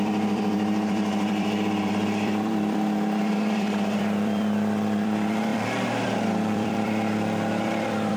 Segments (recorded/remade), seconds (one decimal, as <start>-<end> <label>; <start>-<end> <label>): 0.0-8.2 remade